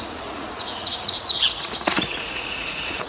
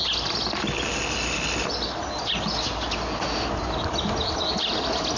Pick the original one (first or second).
second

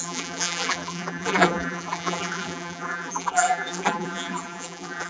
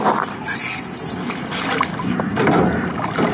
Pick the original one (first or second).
second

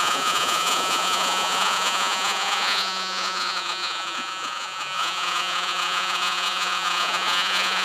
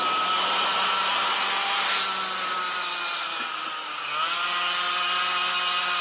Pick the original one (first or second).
second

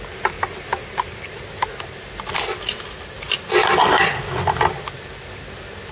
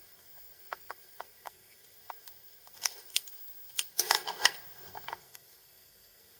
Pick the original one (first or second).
first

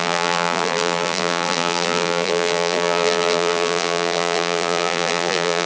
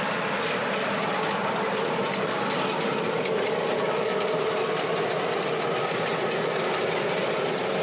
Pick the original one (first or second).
second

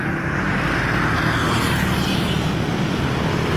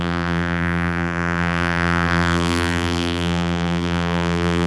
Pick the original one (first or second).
first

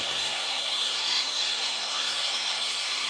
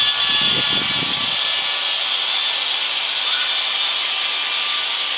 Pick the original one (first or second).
second